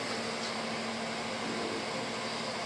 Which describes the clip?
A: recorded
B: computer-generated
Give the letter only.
A